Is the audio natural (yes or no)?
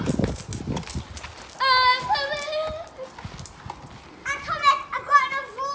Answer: yes